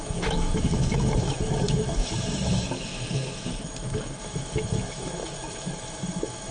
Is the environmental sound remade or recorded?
remade